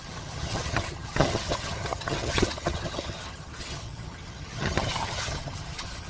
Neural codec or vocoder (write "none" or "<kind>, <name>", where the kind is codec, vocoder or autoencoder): vocoder, HiFi-GAN